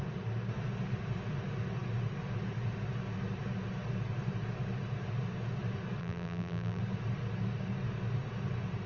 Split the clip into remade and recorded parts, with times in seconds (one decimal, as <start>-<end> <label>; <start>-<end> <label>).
0.0-6.0 recorded; 6.0-6.8 remade; 6.8-8.9 recorded